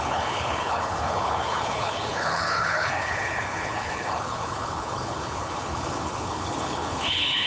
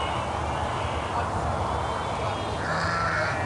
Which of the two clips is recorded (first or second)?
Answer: second